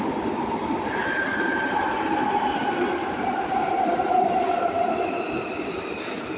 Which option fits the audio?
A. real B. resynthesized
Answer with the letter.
B